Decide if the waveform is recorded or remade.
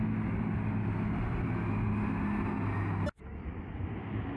recorded